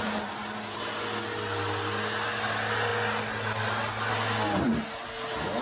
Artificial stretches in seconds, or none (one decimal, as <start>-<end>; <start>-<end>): none